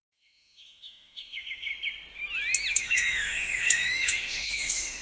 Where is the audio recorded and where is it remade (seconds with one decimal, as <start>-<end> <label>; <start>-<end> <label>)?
0.0-1.7 remade; 1.7-2.7 recorded; 2.7-5.0 remade

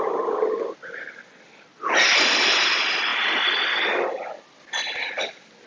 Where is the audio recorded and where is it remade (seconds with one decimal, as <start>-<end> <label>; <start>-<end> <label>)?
0.0-5.7 recorded

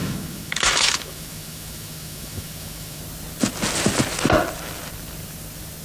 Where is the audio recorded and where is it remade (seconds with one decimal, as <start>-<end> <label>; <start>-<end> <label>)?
0.0-3.0 remade; 3.0-5.8 recorded